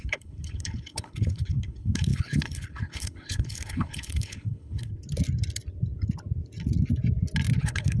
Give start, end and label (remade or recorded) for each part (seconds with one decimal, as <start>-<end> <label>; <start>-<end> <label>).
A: 0.0-4.9 remade; 4.9-7.6 recorded; 7.6-8.0 remade